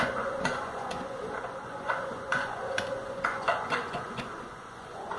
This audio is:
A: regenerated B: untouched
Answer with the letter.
A